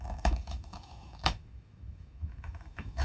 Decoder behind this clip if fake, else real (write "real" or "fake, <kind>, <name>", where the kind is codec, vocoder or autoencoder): fake, autoencoder, DAC-VAE